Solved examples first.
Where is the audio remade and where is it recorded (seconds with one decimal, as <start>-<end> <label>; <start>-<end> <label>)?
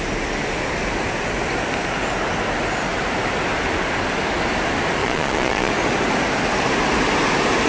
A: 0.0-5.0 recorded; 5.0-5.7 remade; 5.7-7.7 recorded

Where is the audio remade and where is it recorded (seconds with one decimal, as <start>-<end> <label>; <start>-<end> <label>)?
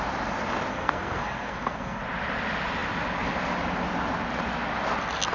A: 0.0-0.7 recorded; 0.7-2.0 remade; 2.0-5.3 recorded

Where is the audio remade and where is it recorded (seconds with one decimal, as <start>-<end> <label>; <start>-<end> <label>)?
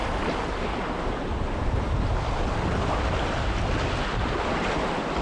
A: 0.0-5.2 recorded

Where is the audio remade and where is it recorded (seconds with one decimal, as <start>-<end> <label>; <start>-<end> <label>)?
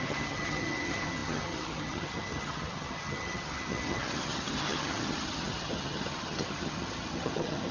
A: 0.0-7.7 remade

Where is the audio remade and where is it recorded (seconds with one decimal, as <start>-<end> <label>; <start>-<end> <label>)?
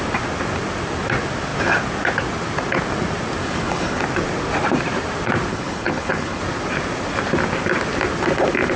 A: 0.0-3.4 recorded; 3.4-4.0 remade; 4.0-5.5 recorded; 5.5-6.4 remade; 6.4-8.8 recorded